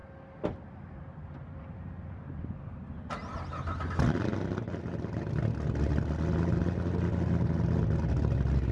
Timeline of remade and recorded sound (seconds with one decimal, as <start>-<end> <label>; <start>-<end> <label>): 0.0-8.7 recorded